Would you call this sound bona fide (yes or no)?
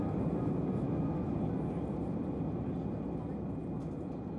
yes